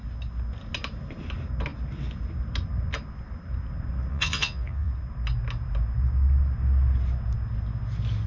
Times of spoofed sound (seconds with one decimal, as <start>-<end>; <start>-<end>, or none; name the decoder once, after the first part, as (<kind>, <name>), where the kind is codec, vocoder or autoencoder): 4.1-4.9 (vocoder, Vocos)